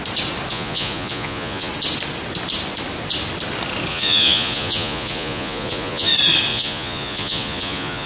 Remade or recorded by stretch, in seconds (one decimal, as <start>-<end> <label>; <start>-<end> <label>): 0.0-0.5 recorded; 0.5-1.7 remade; 1.7-3.9 recorded; 3.9-6.1 remade; 6.1-6.5 recorded; 6.5-8.1 remade

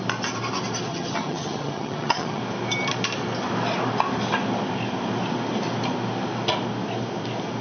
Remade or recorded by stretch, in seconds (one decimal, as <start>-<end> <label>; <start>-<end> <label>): 0.0-0.9 recorded; 0.9-2.4 remade; 2.4-7.6 recorded

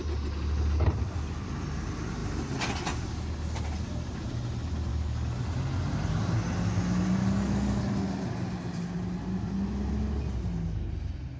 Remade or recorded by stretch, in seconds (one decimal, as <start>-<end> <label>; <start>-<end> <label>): 0.0-4.9 recorded; 4.9-5.4 remade; 5.4-7.2 recorded; 7.2-7.8 remade; 7.8-11.4 recorded

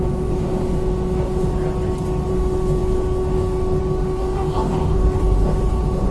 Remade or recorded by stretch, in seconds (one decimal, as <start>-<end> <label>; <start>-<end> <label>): 0.0-1.5 remade; 1.5-2.3 recorded; 2.3-6.1 remade

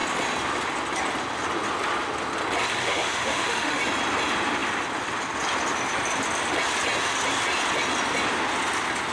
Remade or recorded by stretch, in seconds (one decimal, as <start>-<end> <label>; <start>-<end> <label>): 0.0-2.8 recorded; 2.8-3.8 remade; 3.8-9.1 recorded